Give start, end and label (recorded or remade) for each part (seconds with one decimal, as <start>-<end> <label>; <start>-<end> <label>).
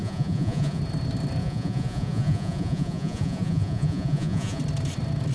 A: 0.0-0.8 remade; 0.8-1.4 recorded; 1.4-4.6 remade; 4.6-5.3 recorded